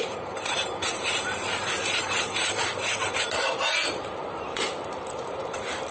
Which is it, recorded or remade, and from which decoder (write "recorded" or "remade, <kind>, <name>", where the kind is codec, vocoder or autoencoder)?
remade, vocoder, BigVGAN v2